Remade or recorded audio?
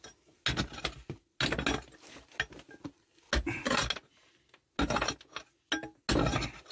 recorded